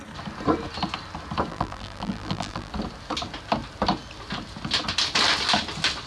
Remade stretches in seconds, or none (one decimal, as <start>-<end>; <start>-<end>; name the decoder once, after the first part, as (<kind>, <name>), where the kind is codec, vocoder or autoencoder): 1.5-2.7 (vocoder, BigVGAN v2)